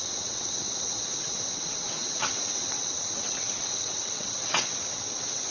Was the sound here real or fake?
fake